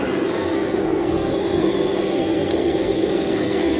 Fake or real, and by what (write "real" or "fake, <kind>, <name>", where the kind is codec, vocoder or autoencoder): fake, codec, SNAC